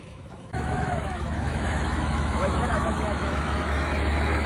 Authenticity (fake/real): fake